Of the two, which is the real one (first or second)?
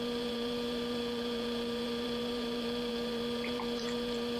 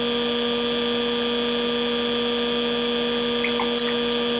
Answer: second